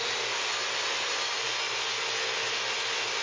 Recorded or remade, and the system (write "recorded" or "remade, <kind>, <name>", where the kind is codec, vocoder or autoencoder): recorded